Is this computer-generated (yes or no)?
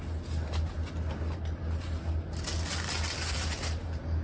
no